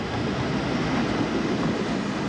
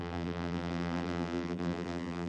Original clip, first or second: first